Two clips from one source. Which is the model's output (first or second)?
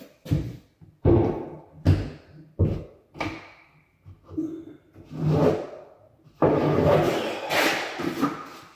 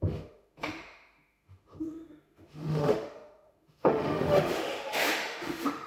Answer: second